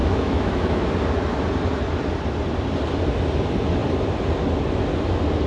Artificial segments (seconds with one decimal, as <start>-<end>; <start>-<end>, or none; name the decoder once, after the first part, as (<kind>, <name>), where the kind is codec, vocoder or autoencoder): 0.0-0.9 (autoencoder, DAC-VAE)